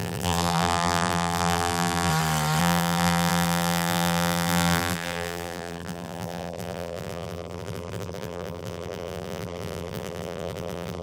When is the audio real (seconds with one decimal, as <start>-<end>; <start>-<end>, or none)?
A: 2.1-2.6